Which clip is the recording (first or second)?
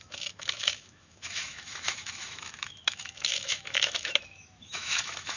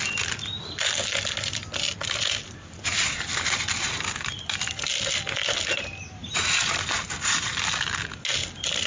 second